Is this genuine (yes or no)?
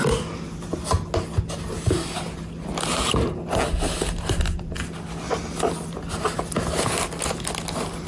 yes